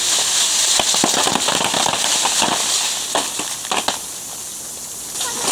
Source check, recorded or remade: recorded